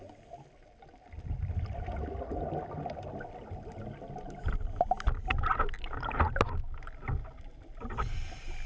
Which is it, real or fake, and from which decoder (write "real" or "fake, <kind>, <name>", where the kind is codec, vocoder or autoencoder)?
real